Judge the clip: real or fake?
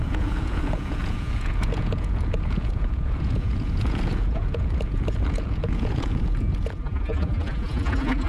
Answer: fake